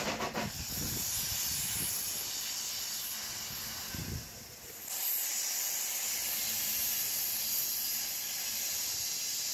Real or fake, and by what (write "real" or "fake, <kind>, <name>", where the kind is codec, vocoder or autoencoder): real